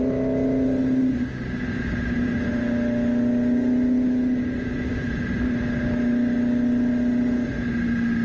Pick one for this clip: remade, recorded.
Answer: recorded